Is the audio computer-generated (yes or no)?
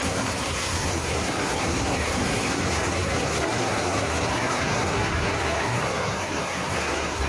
yes